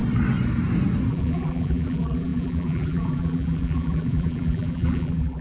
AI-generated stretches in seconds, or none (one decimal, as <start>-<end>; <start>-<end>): 1.1-5.4